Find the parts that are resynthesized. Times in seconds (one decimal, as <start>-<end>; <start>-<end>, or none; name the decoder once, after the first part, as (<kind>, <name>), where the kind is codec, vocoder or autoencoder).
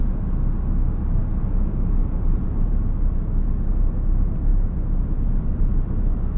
none